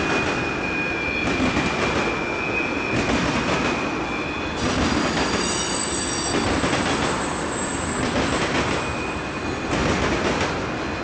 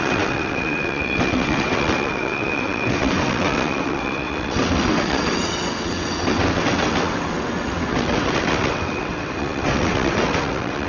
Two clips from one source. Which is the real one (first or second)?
first